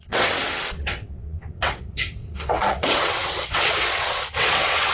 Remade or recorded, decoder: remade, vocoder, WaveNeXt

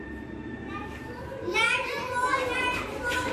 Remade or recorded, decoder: recorded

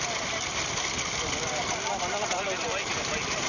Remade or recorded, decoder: recorded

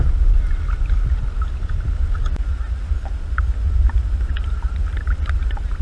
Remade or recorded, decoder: recorded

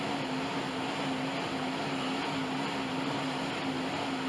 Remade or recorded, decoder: recorded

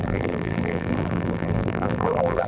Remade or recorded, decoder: remade, vocoder, BigVGAN v2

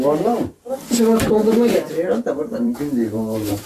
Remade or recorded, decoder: remade, vocoder, BigVGAN v2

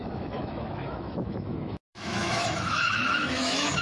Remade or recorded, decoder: remade, autoencoder, DAC-VAE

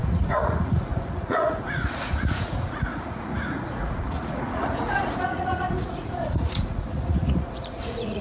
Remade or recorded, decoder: remade, vocoder, Vocos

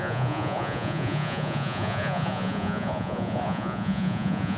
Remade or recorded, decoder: remade, vocoder, Vocos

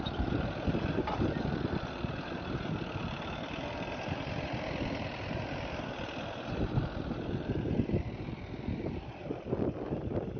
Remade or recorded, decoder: recorded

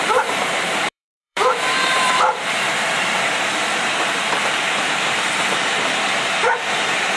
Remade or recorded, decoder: remade, vocoder, BigVGAN v2